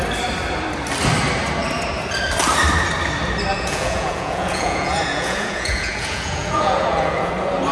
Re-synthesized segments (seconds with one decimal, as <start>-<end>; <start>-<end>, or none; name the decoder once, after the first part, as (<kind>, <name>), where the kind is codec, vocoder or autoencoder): 3.5-7.3 (vocoder, Vocos)